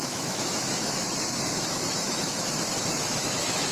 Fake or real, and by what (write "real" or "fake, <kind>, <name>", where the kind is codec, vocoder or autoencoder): fake, autoencoder, DAC-VAE